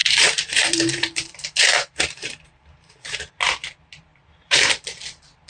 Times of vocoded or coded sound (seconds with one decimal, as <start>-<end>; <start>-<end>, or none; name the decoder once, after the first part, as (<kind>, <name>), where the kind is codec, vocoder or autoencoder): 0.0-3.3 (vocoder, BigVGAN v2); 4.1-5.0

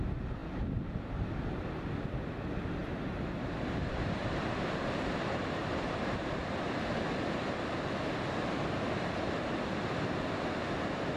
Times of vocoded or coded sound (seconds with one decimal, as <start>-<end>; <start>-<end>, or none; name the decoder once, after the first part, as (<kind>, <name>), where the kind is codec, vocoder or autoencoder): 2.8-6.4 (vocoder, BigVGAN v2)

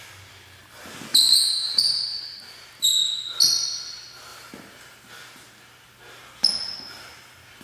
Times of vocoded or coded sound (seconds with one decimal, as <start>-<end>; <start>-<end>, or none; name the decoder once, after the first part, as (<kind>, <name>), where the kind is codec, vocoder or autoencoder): 1.1-2.4 (vocoder, BigVGAN v2); 4.3-5.1

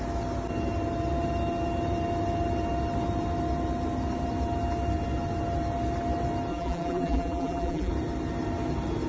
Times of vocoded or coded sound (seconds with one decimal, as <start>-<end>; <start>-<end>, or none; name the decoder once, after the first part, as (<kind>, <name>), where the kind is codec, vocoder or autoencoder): 6.5-7.9 (vocoder, BigVGAN v2)